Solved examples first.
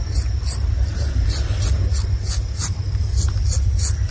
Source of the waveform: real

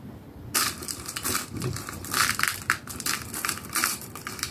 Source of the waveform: fake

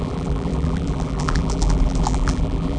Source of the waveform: fake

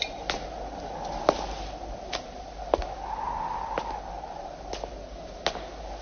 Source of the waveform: real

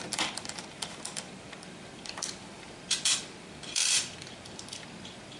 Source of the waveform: fake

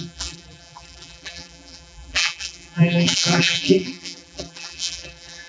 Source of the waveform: fake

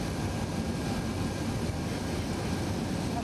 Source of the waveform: real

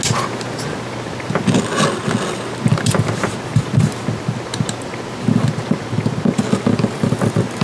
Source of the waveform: real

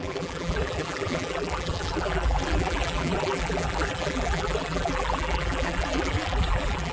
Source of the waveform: fake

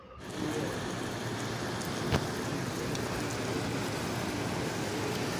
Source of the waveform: real